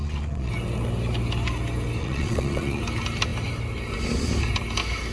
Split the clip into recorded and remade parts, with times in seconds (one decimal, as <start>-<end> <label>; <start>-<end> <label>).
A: 0.0-0.5 remade; 0.5-2.0 recorded; 2.0-2.8 remade; 2.8-5.1 recorded